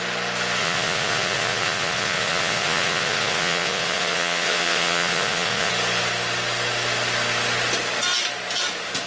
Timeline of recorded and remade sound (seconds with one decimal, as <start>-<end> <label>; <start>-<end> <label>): 0.0-0.6 recorded; 0.6-5.7 remade; 5.7-9.1 recorded